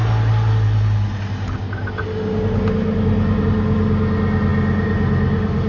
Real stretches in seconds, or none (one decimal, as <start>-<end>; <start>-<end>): 0.0-5.7